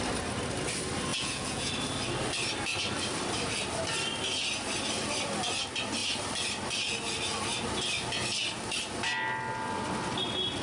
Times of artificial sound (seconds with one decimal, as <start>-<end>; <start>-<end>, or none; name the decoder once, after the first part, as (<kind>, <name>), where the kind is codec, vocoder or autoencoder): 1.1-1.7 (vocoder, Vocos)